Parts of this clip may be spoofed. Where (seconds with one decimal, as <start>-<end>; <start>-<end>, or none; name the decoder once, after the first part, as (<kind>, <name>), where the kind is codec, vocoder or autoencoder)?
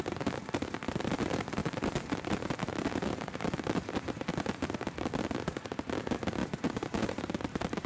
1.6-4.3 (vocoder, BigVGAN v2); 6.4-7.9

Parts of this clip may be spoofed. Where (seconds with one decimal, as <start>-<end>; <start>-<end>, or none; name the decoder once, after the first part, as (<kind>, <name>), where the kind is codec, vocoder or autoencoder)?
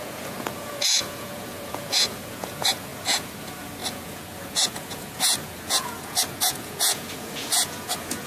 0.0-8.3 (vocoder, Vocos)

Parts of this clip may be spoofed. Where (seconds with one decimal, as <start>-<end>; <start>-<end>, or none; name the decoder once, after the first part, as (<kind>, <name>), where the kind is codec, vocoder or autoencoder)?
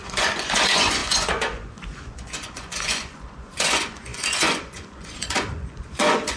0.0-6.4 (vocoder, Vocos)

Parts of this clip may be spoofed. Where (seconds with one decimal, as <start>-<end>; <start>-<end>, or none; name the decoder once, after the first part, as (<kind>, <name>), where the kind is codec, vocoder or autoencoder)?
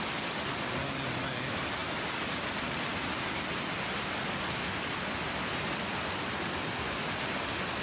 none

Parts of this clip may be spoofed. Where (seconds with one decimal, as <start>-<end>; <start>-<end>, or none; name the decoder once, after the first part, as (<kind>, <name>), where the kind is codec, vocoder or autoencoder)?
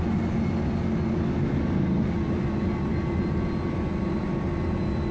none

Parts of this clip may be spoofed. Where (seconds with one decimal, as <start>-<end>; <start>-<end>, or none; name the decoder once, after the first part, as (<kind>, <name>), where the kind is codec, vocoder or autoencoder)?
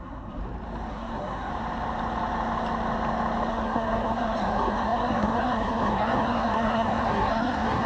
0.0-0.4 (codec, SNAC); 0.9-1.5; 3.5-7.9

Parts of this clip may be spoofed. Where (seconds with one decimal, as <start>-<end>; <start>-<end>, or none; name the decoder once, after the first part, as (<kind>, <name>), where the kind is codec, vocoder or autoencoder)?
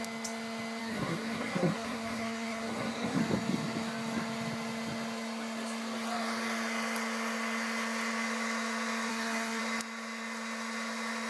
0.8-3.2 (codec, SNAC); 9.1-9.6